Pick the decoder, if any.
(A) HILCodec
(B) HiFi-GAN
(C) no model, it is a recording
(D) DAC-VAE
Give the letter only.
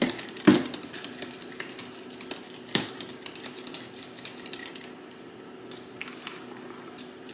C